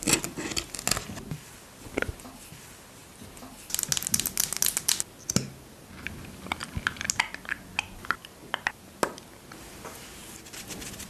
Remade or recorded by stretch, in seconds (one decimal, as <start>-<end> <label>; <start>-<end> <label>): 0.0-11.1 recorded

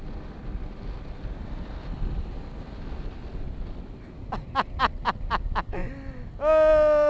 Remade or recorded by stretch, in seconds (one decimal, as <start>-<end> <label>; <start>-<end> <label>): 0.0-3.3 remade; 3.3-4.8 recorded; 4.8-5.8 remade; 5.8-7.1 recorded

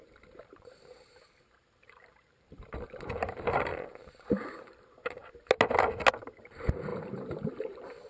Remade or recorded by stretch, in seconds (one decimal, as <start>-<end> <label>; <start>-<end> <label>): 0.0-5.2 remade; 5.2-6.1 recorded; 6.1-8.1 remade

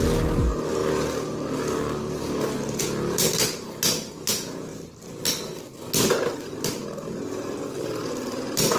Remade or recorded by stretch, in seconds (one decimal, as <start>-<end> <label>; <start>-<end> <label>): 0.0-0.8 recorded; 0.8-2.8 remade; 2.8-4.7 recorded; 4.7-5.8 remade; 5.8-8.8 recorded

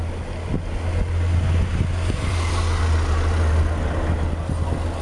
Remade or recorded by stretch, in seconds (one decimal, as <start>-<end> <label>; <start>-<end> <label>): 0.0-1.7 recorded; 1.7-2.4 remade; 2.4-5.0 recorded

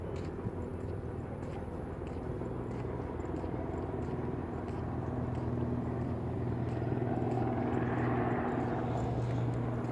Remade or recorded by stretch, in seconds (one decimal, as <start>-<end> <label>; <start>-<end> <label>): 0.0-9.9 recorded

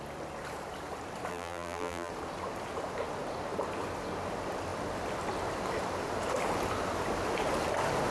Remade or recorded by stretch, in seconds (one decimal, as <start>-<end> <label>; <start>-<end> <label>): 0.0-1.3 recorded; 1.3-2.1 remade; 2.1-8.1 recorded

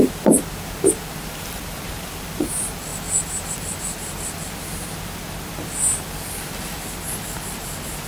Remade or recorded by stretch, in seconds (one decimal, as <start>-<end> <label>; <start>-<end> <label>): 0.0-2.9 remade; 2.9-3.5 recorded; 3.5-8.1 remade